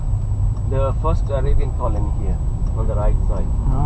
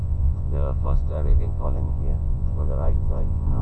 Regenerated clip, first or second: second